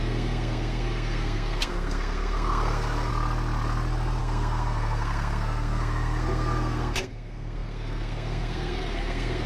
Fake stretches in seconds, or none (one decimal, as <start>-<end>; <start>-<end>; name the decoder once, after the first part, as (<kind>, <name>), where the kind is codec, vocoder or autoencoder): 0.0-3.1 (codec, SNAC); 4.2-9.5